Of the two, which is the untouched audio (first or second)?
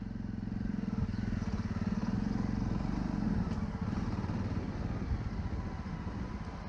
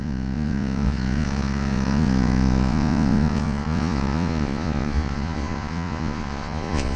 first